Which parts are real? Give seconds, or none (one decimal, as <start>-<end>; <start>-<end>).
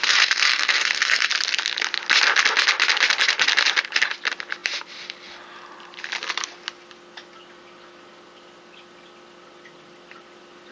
1.3-10.7